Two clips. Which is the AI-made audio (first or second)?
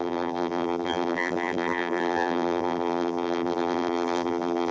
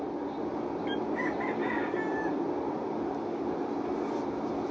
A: first